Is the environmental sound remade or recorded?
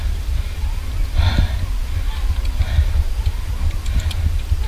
recorded